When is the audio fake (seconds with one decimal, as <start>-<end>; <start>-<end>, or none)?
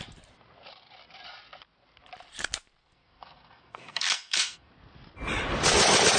2.8-4.7